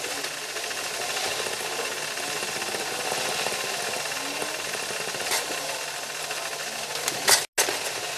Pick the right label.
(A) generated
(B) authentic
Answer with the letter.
B